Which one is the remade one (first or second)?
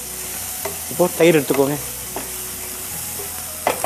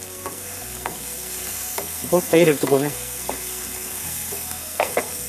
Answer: second